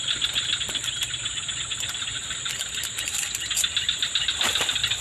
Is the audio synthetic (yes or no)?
no